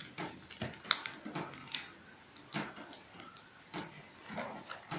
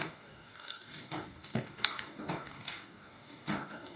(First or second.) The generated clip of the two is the second